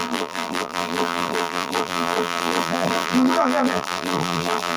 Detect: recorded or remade remade